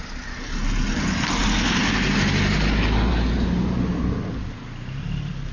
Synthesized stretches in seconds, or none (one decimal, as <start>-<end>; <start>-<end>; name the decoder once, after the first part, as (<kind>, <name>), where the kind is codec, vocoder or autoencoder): none